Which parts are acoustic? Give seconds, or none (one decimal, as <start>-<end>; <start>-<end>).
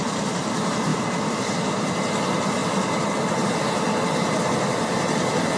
0.0-0.9; 1.9-5.6